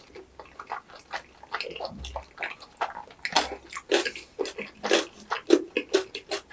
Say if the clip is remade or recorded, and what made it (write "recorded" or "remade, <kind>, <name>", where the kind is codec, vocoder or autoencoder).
recorded